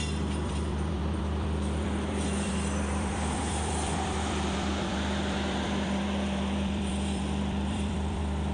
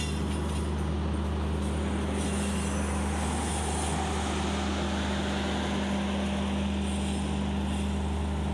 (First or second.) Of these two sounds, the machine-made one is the first